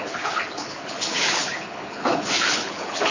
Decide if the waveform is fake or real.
fake